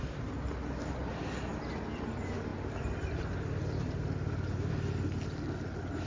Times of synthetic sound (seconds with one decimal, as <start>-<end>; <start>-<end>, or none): none